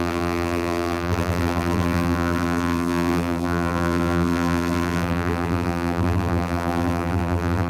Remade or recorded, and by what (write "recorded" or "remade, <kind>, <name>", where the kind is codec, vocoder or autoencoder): remade, vocoder, BigVGAN v2